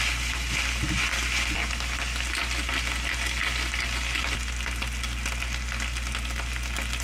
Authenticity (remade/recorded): recorded